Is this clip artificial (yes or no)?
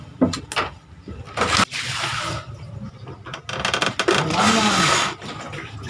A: no